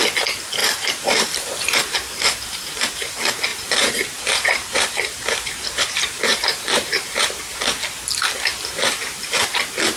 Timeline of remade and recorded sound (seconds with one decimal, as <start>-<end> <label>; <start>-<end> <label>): 0.0-0.6 recorded; 0.6-3.1 remade; 3.1-3.5 recorded; 3.5-7.4 remade; 7.4-8.5 recorded; 8.5-9.4 remade; 9.4-10.0 recorded